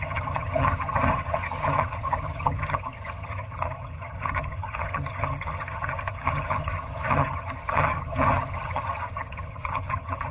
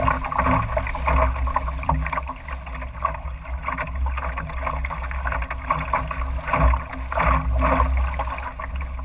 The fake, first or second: first